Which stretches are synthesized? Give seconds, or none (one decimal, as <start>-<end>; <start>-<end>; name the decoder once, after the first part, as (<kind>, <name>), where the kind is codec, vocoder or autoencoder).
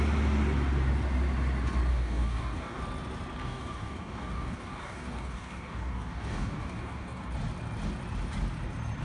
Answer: 1.9-2.8 (codec, DAC); 3.4-7.3